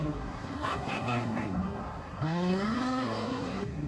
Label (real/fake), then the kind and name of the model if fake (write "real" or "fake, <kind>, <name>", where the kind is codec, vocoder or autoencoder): fake, codec, SNAC